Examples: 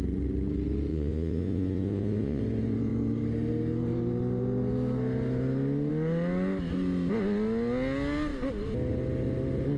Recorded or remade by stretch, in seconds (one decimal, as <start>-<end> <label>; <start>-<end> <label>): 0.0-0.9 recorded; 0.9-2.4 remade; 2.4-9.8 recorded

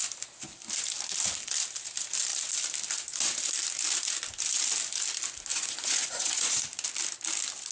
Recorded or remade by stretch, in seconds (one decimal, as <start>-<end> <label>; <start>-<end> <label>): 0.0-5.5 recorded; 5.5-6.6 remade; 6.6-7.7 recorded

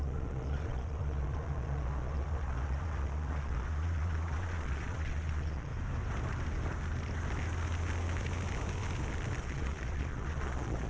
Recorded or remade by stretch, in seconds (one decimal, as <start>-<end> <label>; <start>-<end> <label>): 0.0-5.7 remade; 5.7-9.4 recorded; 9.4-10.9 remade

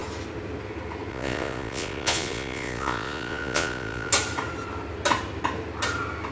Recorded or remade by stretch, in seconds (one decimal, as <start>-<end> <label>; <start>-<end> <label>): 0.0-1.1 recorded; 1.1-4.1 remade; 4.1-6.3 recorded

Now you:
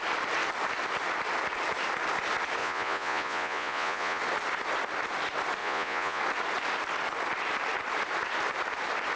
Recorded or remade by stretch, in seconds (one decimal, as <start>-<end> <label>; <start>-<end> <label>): 0.0-2.6 recorded; 2.6-4.2 remade; 4.2-5.6 recorded; 5.6-6.2 remade; 6.2-9.2 recorded